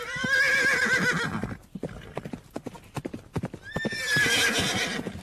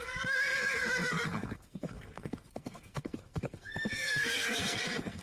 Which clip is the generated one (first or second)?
second